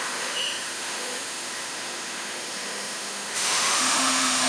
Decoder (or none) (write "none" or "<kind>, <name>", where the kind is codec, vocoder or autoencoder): autoencoder, DAC-VAE